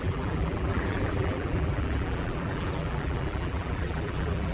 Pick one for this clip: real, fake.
fake